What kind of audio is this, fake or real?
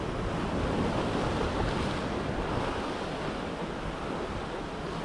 real